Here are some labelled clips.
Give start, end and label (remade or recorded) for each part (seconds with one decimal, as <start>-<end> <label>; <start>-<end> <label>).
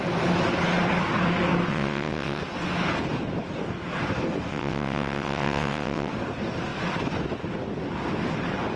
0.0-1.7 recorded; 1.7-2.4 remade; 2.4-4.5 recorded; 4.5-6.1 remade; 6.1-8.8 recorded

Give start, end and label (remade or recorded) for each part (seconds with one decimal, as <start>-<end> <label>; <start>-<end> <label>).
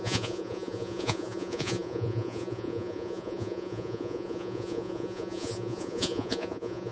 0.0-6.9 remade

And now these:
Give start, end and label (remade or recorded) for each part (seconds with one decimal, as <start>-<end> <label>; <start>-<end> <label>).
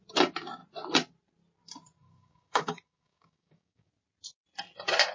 0.0-2.0 recorded; 2.0-3.9 remade; 3.9-5.1 recorded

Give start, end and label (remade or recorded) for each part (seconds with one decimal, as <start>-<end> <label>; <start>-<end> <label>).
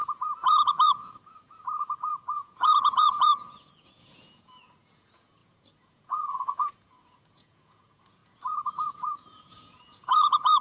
0.0-10.6 remade